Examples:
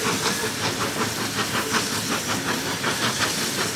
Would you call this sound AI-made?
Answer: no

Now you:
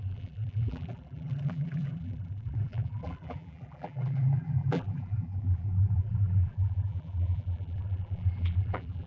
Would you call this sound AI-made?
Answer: yes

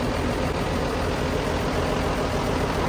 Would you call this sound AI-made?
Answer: no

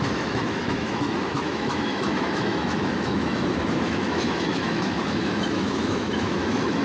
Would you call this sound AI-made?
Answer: yes